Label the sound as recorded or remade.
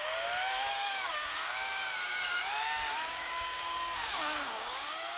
remade